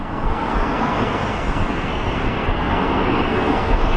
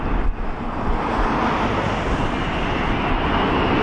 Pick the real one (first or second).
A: second